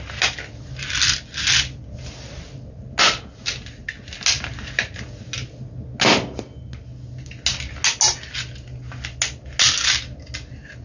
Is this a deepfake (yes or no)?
no